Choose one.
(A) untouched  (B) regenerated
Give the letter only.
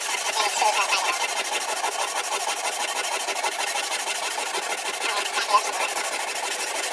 A